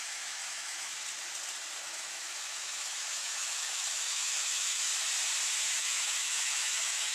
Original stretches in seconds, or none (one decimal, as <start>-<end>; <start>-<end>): 0.9-1.8; 4.9-5.8